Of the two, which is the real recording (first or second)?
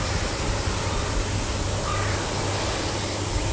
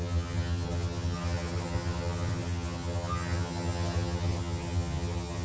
first